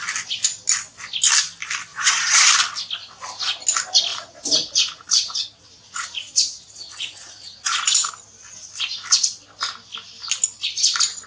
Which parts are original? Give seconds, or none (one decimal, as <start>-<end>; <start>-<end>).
0.0-1.9; 2.5-4.1; 8.1-11.3